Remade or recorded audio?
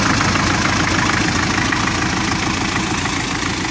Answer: recorded